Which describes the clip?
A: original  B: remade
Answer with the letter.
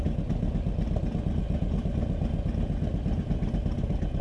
A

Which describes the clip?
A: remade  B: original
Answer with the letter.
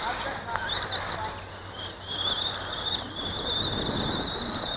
B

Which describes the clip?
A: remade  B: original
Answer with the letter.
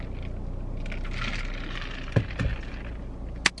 B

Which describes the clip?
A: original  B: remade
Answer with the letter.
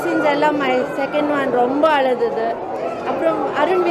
A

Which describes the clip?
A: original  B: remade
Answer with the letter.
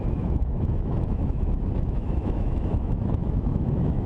B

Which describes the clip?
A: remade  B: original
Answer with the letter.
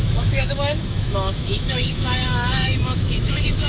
A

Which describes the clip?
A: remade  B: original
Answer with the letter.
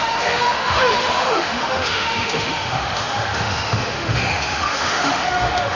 A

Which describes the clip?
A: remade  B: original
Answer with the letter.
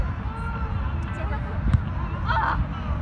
B